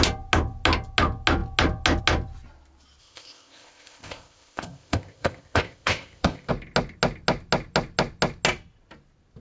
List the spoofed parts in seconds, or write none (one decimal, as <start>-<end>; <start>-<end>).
3.0-6.5